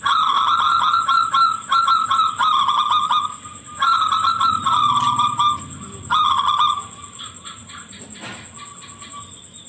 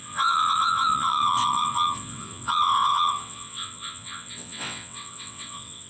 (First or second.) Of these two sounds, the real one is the first